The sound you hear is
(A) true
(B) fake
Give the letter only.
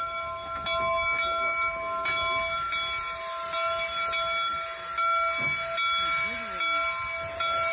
A